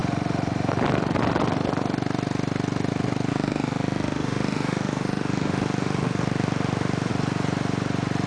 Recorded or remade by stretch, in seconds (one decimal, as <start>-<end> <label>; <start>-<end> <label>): 0.0-3.3 recorded; 3.3-7.1 remade; 7.1-8.3 recorded